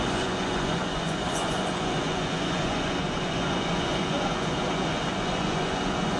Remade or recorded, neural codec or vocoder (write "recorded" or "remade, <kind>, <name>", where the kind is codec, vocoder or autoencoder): remade, vocoder, Vocos